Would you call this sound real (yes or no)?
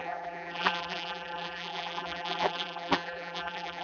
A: no